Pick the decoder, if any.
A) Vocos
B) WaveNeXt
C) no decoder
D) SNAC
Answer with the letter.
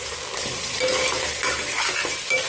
C